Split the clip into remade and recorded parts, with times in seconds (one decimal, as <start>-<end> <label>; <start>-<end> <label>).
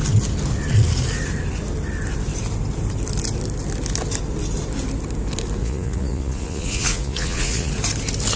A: 0.0-5.6 recorded; 5.6-7.7 remade; 7.7-8.4 recorded